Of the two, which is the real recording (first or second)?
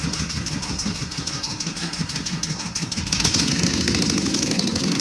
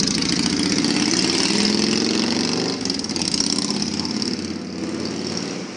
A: second